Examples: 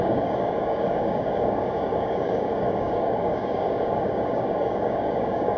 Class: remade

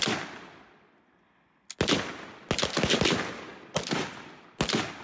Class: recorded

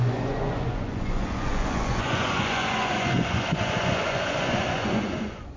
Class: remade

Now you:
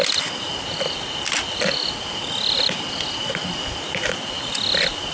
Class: recorded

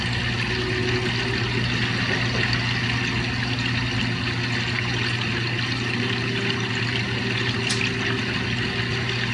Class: recorded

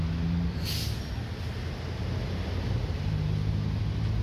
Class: recorded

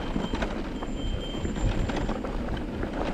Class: recorded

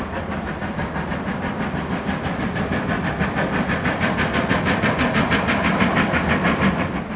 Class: recorded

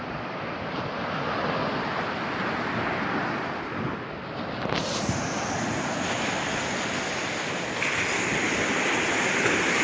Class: recorded